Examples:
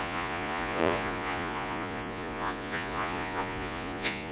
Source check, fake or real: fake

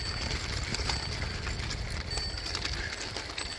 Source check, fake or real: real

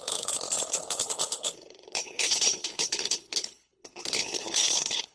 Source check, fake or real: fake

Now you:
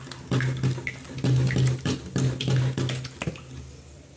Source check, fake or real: real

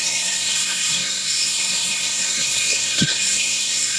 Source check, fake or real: fake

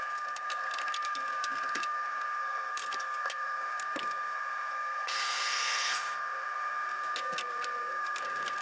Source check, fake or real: fake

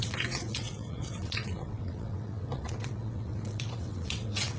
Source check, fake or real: fake